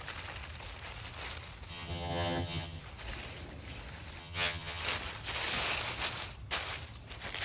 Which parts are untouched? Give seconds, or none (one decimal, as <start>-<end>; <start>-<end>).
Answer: 0.0-1.7; 2.8-4.2; 4.8-7.4